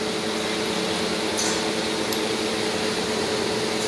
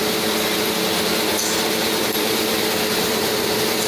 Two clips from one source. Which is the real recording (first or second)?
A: first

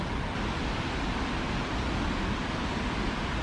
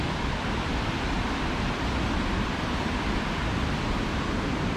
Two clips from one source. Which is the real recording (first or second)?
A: first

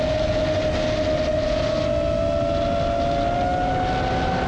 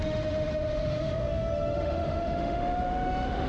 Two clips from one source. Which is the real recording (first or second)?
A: first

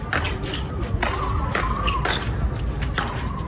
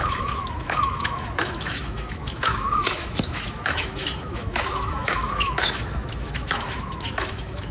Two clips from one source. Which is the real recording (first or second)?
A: first